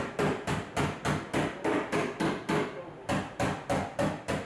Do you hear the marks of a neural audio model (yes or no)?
no